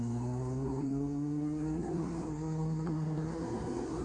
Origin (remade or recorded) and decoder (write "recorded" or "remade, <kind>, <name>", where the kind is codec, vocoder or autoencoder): remade, codec, SNAC